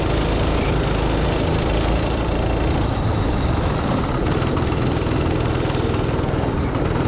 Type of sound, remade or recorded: recorded